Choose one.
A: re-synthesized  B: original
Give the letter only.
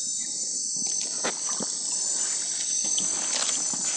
B